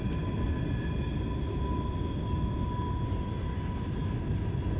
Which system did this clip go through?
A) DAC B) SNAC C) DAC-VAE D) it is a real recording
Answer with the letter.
D